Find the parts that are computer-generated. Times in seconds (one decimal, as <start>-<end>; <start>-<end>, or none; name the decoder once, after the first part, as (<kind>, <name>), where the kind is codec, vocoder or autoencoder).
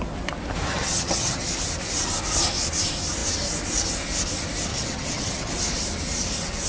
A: 0.7-1.4 (vocoder, HiFi-GAN); 4.7-5.5